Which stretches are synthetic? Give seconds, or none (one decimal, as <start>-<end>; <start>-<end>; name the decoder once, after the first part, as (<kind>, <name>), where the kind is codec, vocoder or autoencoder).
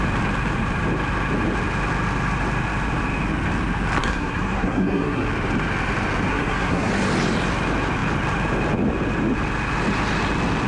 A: 4.0-5.3 (codec, SNAC); 6.3-6.9